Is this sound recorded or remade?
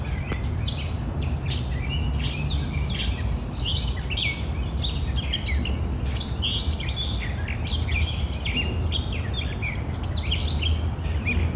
recorded